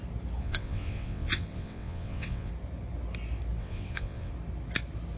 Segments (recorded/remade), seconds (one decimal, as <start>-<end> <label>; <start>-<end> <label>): 0.0-0.4 recorded; 0.4-2.5 remade; 2.5-3.6 recorded; 3.6-4.3 remade; 4.3-5.2 recorded